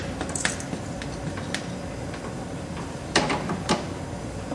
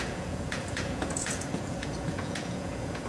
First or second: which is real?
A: first